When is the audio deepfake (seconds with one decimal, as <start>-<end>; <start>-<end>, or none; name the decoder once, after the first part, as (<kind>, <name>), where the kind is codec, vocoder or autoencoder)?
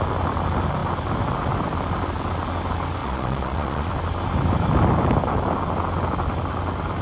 3.0-3.9 (vocoder, Vocos)